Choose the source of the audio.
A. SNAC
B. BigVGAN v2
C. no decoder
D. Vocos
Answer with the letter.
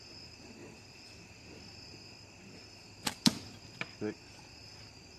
C